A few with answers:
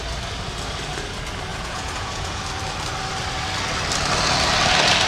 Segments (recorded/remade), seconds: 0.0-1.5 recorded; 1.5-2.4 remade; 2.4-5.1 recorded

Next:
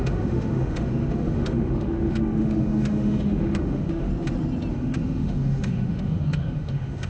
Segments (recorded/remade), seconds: 0.0-4.1 remade; 4.1-4.7 recorded; 4.7-7.1 remade

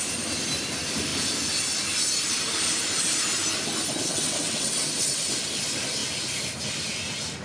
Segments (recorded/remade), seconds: 0.0-4.1 recorded; 4.1-5.3 remade; 5.3-7.4 recorded

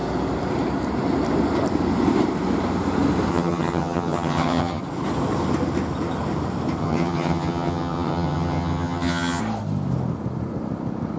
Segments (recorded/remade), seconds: 0.0-3.3 recorded; 3.3-4.8 remade; 4.8-6.8 recorded; 6.8-9.4 remade; 9.4-11.2 recorded

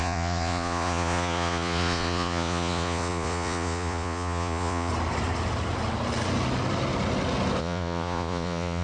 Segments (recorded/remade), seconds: 0.0-4.9 remade; 4.9-7.6 recorded; 7.6-8.8 remade

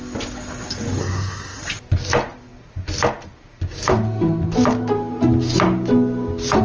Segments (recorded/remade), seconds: 0.0-1.0 recorded; 1.0-1.6 remade; 1.6-6.6 recorded